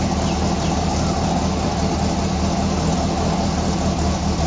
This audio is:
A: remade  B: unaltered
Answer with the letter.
B